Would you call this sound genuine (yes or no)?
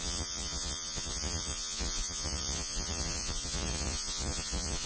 no